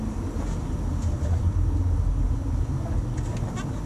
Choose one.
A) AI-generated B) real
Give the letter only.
B